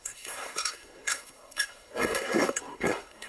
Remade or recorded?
remade